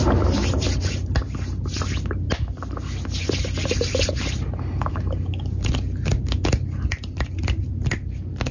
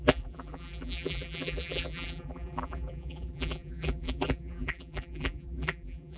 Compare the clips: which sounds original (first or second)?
first